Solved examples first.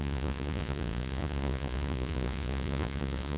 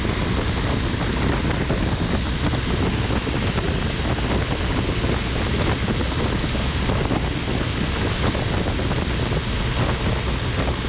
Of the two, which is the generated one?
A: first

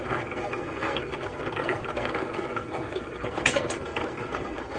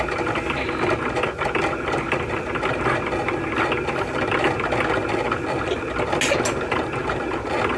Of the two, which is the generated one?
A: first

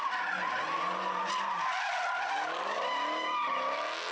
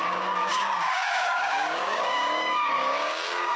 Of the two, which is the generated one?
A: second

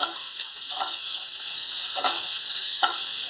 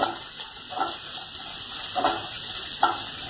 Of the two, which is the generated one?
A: first